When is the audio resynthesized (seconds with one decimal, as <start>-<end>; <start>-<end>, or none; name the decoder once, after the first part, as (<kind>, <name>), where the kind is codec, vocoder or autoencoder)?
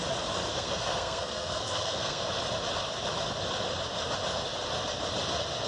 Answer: 0.5-2.2 (codec, SNAC)